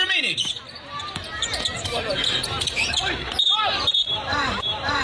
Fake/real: fake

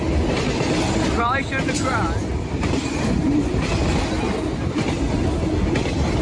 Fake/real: real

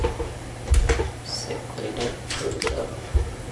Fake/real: fake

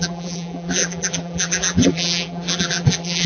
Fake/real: fake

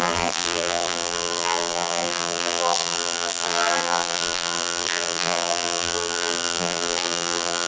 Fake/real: fake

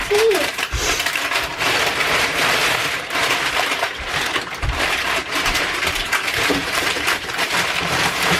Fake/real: fake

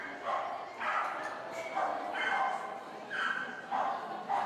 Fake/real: real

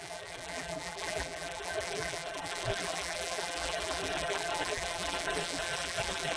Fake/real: fake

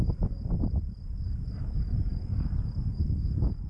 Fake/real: real